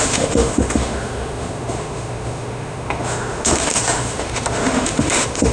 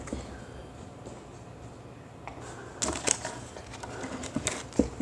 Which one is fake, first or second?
first